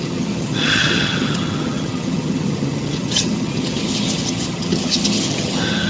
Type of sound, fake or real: fake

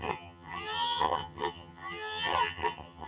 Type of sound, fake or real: fake